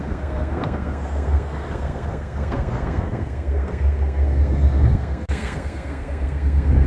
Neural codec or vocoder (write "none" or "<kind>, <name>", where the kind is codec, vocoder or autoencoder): codec, SNAC